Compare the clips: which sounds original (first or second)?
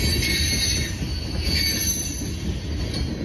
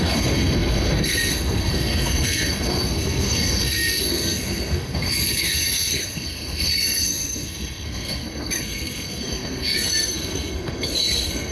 first